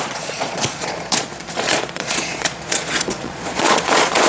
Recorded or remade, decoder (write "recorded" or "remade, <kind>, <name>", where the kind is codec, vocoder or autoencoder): remade, vocoder, Vocos